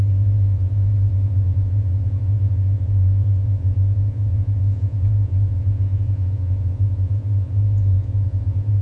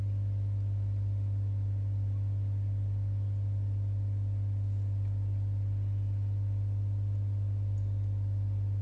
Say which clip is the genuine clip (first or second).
second